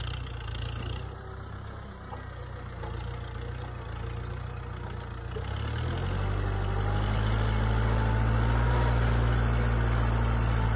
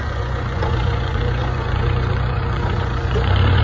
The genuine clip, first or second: first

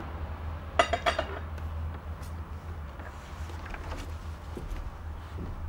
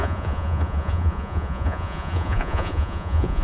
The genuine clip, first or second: first